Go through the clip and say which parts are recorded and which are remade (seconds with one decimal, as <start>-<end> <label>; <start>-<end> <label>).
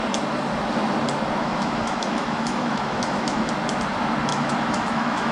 0.0-1.4 recorded; 1.4-3.5 remade; 3.5-4.3 recorded; 4.3-5.3 remade